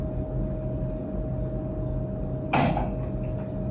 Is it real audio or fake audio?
real